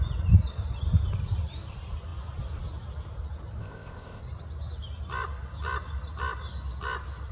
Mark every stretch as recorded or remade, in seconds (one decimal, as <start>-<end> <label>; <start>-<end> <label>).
0.0-3.6 recorded; 3.6-4.2 remade; 4.2-7.3 recorded